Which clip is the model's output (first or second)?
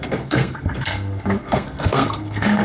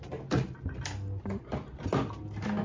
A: first